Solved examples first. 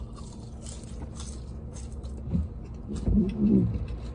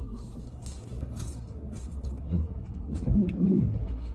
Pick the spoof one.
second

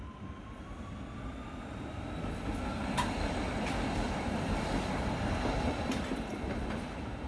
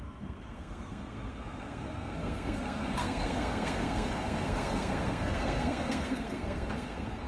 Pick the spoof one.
second